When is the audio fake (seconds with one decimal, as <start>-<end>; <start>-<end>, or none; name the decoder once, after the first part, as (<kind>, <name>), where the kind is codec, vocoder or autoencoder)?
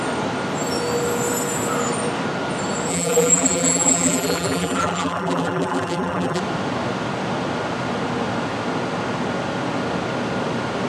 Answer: 2.9-6.4 (vocoder, BigVGAN v2)